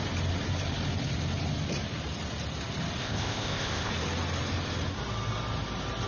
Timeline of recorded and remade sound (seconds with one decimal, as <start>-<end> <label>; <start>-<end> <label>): 0.0-3.0 recorded; 3.0-3.9 remade; 3.9-6.1 recorded